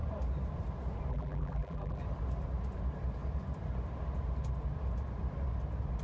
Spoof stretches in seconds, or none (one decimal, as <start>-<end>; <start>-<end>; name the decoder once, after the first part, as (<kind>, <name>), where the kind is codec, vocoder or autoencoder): 1.1-2.0 (vocoder, BigVGAN v2)

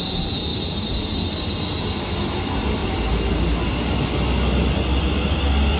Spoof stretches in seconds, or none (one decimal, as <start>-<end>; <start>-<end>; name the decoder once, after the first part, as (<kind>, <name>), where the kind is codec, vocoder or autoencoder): 0.5-1.6 (vocoder, BigVGAN v2)

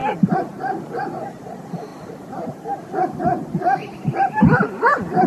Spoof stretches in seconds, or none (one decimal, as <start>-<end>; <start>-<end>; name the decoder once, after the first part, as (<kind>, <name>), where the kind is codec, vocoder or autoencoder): 0.0-1.0 (vocoder, BigVGAN v2); 1.9-5.3

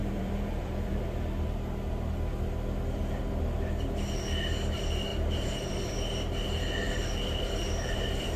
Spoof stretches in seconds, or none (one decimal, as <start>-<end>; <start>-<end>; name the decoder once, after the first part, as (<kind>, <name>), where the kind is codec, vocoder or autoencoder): 0.0-1.0 (vocoder, BigVGAN v2); 5.1-5.7

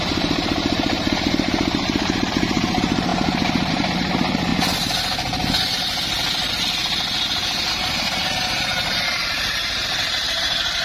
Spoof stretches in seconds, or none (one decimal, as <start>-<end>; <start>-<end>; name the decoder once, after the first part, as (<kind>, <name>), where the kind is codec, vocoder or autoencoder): 0.0-3.1 (vocoder, BigVGAN v2); 3.7-4.5; 7.7-9.6; 10.4-10.8

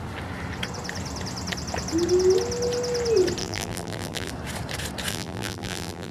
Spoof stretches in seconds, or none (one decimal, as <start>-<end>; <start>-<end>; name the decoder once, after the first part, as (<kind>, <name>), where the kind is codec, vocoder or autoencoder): 3.4-4.3 (vocoder, BigVGAN v2); 5.1-6.1

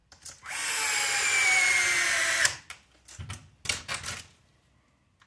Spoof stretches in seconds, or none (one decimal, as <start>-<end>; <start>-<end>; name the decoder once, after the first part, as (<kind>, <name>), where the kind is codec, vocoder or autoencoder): none

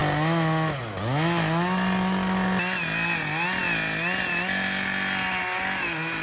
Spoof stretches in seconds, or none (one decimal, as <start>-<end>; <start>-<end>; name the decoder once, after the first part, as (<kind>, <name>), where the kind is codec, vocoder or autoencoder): none